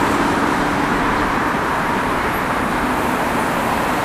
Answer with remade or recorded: remade